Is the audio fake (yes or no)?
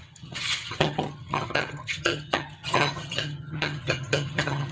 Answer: yes